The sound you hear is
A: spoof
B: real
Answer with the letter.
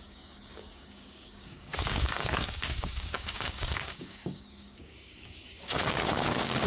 A